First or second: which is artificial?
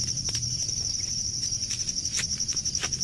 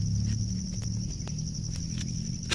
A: first